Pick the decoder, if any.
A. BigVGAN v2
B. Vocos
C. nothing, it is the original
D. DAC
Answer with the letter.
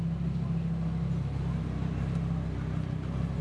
C